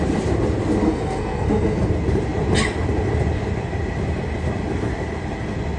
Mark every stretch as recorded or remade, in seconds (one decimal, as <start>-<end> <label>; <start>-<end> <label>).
0.0-0.8 recorded; 0.8-1.9 remade; 1.9-5.8 recorded